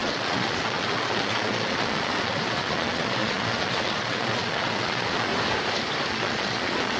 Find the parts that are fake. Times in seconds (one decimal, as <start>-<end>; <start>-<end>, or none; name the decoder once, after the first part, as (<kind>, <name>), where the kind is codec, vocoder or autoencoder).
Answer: 0.0-5.3 (vocoder, Vocos); 6.1-7.0